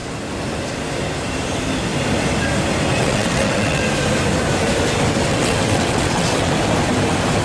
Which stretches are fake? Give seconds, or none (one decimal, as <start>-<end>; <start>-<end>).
3.0-3.8; 5.3-6.5